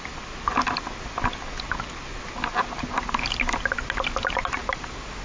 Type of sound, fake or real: real